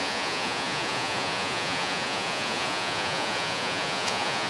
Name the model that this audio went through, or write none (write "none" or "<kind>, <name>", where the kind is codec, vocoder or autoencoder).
vocoder, Vocos